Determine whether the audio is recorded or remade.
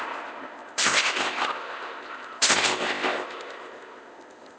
remade